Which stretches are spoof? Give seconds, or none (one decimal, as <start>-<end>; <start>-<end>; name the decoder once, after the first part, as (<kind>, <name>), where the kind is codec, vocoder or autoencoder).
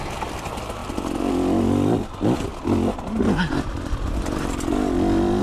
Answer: none